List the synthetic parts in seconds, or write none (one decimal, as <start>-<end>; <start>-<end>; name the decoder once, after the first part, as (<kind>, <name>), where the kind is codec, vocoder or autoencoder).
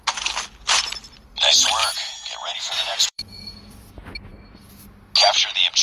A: 1.8-3.9 (vocoder, Vocos)